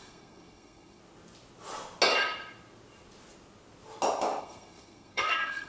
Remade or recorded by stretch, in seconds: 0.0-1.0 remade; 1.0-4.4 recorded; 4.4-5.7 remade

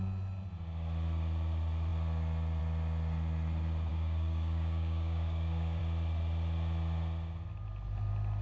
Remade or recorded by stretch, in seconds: 0.0-3.9 recorded; 3.9-5.8 remade; 5.8-8.4 recorded

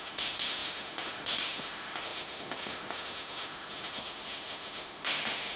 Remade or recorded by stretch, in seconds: 0.0-5.6 remade